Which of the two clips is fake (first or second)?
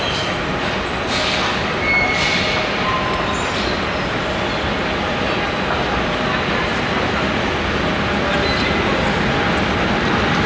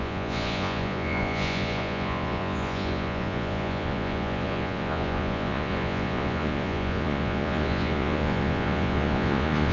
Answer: second